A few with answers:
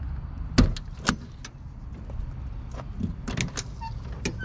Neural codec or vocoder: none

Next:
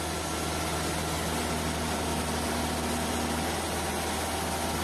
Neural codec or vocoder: none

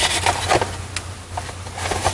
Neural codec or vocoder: none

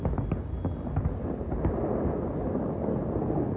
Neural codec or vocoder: none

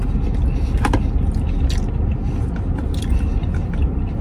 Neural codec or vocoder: none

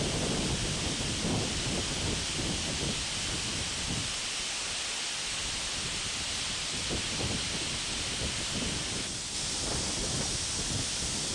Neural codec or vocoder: none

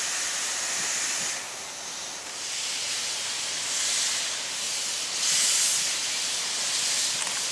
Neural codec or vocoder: none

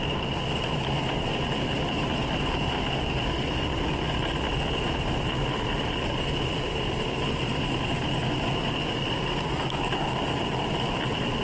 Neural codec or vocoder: none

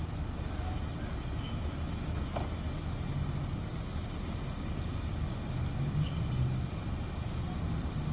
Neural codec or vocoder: none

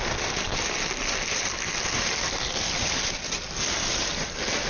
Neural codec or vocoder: none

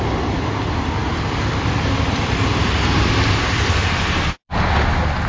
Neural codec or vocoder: none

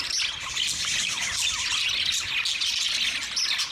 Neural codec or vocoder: none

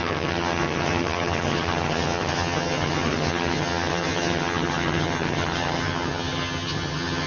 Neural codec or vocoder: vocoder, HiFi-GAN